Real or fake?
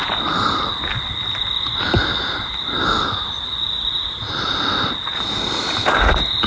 real